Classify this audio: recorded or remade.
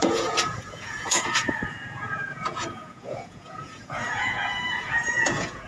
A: remade